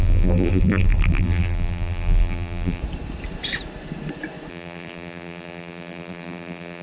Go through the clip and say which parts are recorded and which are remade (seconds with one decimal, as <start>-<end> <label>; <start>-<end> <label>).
0.0-2.8 remade; 2.8-4.5 recorded; 4.5-6.8 remade